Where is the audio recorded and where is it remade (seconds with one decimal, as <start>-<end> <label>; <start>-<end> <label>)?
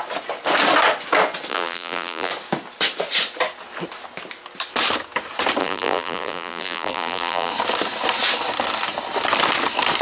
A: 0.0-1.5 recorded; 1.5-2.3 remade; 2.3-5.6 recorded; 5.6-7.5 remade; 7.5-10.0 recorded